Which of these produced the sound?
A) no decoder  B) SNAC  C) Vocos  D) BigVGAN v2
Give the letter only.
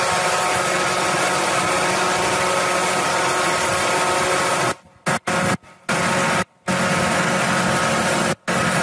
A